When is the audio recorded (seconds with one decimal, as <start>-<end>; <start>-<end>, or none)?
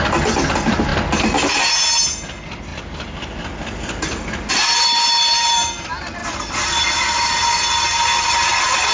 0.0-6.2; 6.9-8.9